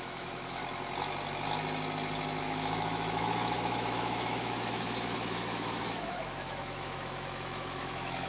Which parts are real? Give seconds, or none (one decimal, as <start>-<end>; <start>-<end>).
0.6-2.4